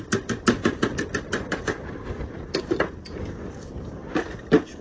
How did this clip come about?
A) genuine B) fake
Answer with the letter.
A